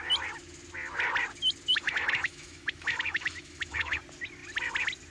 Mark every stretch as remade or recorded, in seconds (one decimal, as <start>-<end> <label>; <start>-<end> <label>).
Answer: 0.0-1.7 recorded; 1.7-4.0 remade; 4.0-5.1 recorded